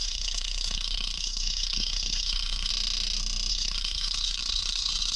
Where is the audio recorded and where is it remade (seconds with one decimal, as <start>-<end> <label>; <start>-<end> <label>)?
0.0-2.7 remade; 2.7-3.5 recorded; 3.5-5.2 remade